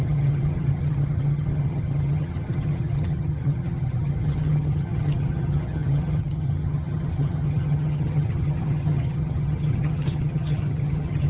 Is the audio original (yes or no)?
no